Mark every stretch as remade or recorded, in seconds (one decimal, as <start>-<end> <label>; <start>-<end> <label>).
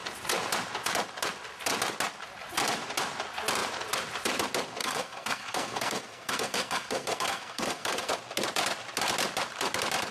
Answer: 0.0-4.8 recorded; 4.8-8.1 remade; 8.1-10.1 recorded